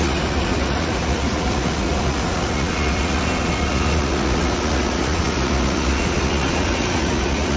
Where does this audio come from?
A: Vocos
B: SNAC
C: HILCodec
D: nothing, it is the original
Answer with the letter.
A